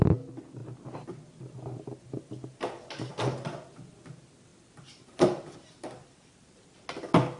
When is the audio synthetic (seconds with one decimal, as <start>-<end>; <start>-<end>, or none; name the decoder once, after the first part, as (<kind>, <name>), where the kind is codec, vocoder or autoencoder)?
none